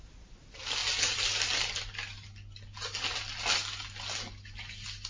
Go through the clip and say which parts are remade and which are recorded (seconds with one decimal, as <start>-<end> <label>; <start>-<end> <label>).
0.0-5.1 recorded

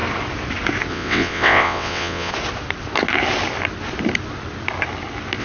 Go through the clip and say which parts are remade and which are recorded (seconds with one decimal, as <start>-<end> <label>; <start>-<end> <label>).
0.0-0.9 recorded; 0.9-2.3 remade; 2.3-5.4 recorded

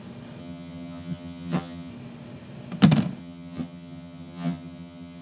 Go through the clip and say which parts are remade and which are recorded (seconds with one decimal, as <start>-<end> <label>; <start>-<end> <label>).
0.0-0.4 recorded; 0.4-1.9 remade; 1.9-3.2 recorded; 3.2-5.2 remade

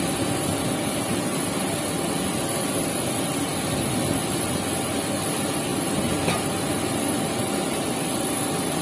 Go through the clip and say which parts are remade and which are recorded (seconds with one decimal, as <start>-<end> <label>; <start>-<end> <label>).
0.0-8.8 recorded

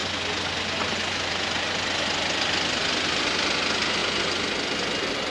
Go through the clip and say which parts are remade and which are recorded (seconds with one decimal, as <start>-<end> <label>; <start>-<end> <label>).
0.0-5.3 recorded

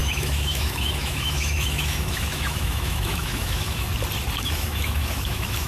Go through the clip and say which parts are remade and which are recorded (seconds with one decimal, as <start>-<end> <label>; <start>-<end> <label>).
0.0-3.9 remade; 3.9-4.4 recorded; 4.4-5.7 remade